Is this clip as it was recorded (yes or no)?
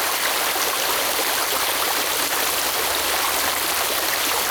yes